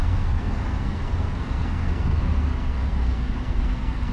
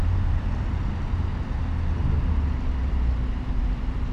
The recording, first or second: second